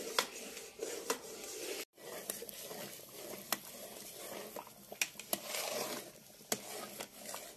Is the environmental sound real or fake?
real